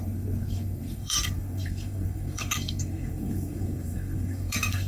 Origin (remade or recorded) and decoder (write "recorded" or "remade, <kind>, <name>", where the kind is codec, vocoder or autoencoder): remade, codec, SNAC